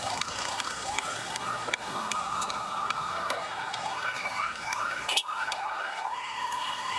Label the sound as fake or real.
fake